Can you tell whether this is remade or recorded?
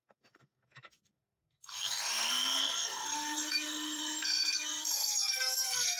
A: remade